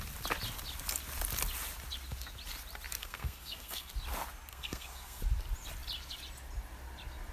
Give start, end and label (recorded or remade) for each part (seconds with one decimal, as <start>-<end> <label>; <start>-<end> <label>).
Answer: 0.0-3.0 recorded; 3.0-3.9 remade; 3.9-4.5 recorded; 4.5-5.2 remade; 5.2-7.3 recorded